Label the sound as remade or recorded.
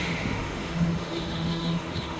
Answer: remade